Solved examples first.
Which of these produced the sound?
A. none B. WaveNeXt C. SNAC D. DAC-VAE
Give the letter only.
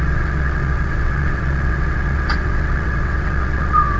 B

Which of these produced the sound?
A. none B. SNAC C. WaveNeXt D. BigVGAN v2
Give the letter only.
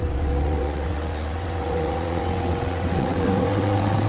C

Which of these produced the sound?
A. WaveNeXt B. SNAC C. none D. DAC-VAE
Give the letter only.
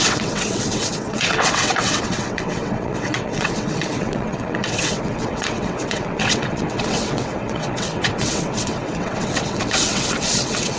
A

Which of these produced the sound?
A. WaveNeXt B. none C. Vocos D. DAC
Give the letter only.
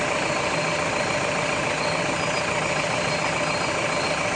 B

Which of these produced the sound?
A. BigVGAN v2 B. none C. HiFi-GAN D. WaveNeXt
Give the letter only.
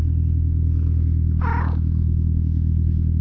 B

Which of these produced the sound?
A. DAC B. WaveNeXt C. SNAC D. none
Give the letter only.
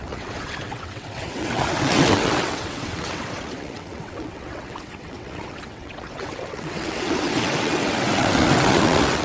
B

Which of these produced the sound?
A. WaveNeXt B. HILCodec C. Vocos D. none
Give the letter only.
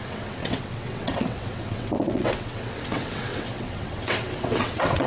A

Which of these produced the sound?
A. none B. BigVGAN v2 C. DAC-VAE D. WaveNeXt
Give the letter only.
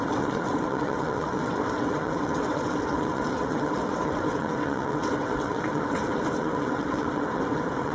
D